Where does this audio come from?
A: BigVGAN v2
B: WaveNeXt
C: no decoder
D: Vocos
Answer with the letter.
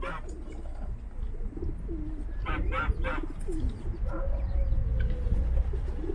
C